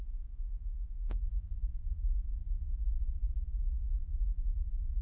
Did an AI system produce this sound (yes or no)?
yes